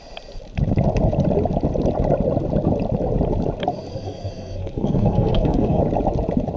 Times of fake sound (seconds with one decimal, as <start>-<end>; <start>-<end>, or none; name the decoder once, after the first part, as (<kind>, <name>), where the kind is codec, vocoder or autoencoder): 3.9-5.8 (codec, SNAC)